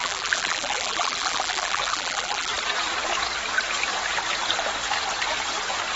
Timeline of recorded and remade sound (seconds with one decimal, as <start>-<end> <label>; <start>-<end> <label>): 0.0-2.5 remade; 2.5-6.0 recorded